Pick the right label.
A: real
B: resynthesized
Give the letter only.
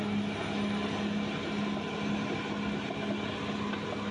A